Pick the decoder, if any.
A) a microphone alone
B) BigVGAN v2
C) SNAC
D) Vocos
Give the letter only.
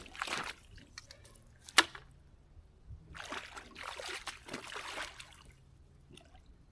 A